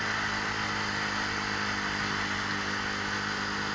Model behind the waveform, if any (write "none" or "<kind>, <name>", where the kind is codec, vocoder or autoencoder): none